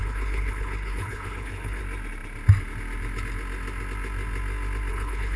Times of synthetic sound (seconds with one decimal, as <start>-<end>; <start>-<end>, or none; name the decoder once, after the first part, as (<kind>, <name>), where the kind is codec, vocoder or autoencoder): 0.0-1.8 (codec, HILCodec); 4.9-5.4